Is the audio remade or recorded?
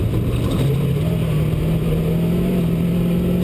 recorded